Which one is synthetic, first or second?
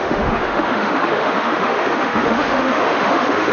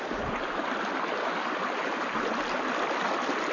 first